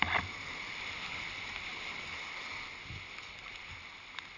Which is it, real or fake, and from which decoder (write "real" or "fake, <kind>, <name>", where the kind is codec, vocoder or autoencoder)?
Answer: real